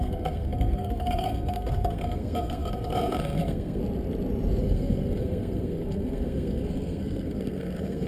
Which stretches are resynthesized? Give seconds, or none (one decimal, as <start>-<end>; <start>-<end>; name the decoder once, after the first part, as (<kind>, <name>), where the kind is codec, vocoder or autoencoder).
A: 0.0-3.8 (codec, SNAC); 4.6-8.1